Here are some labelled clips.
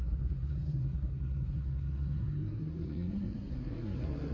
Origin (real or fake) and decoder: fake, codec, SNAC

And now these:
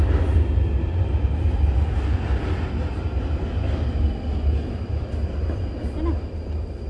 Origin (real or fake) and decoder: real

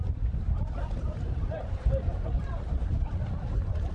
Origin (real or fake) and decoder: real